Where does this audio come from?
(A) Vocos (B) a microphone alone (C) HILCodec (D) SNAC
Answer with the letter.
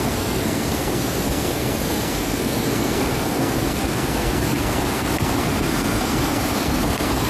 D